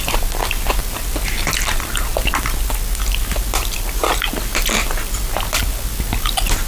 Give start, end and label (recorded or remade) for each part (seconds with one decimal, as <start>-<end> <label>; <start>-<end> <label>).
0.0-0.8 remade; 0.8-1.7 recorded; 1.7-2.1 remade; 2.1-5.6 recorded; 5.6-6.7 remade